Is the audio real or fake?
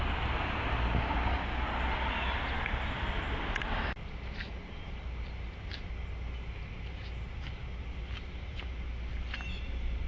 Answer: real